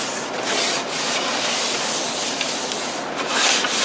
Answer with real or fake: real